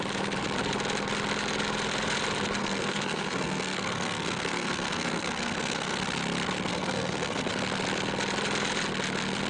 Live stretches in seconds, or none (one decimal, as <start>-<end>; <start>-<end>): 0.0-2.6; 6.0-6.7; 7.5-9.5